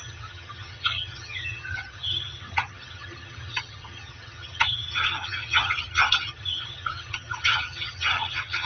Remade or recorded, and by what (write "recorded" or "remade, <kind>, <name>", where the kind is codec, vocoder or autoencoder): remade, vocoder, HiFi-GAN